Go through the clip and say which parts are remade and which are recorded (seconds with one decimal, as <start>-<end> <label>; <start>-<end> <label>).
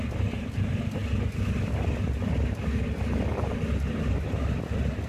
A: 0.0-5.1 recorded